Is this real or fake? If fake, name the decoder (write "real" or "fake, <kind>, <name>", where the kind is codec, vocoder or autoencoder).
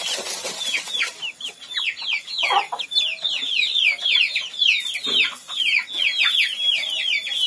real